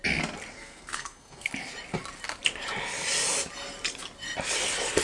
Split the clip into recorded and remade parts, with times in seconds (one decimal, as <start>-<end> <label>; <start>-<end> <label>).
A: 0.0-0.5 recorded; 0.5-1.5 remade; 1.5-5.0 recorded